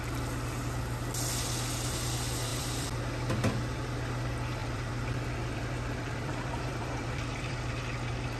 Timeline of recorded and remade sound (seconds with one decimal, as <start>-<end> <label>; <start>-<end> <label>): 0.0-2.5 recorded; 2.5-3.0 remade; 3.0-4.6 recorded; 4.6-7.7 remade; 7.7-8.4 recorded